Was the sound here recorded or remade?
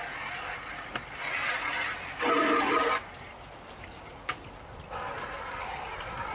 recorded